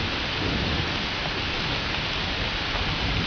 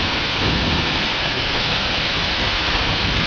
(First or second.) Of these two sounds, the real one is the first